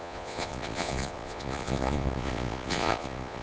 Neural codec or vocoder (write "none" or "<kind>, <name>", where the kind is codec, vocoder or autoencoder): vocoder, Vocos